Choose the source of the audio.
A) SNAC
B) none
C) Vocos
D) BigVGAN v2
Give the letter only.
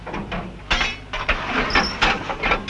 B